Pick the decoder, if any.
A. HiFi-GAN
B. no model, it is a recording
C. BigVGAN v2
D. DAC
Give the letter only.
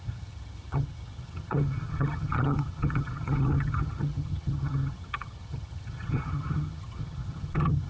A